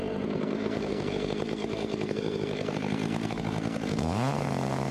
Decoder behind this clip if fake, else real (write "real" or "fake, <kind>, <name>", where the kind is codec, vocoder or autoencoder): fake, codec, SNAC